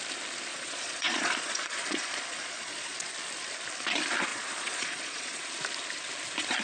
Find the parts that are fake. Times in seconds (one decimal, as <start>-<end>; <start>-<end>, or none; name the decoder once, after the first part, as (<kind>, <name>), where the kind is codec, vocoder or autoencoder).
0.5-3.1 (vocoder, Vocos); 4.3-5.4

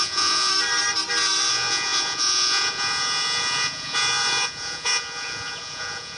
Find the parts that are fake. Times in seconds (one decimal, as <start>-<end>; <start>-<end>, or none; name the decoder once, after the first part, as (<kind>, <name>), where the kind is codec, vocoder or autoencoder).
0.0-0.5 (vocoder, Vocos); 1.5-6.2